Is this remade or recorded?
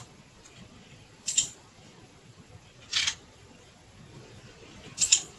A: remade